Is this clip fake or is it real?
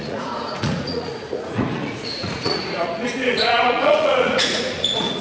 fake